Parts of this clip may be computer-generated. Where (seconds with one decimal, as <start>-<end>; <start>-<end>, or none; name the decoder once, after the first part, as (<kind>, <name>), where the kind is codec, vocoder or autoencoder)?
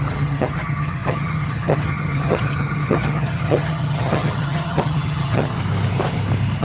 0.0-5.5 (vocoder, HiFi-GAN)